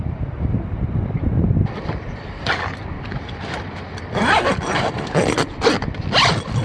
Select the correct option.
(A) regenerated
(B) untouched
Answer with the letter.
B